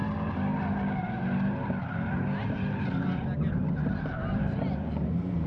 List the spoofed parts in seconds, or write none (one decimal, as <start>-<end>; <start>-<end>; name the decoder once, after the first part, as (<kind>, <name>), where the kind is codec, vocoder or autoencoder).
3.3-5.5 (vocoder, BigVGAN v2)